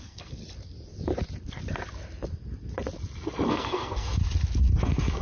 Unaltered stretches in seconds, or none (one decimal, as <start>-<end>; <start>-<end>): 0.4-3.5; 4.2-4.8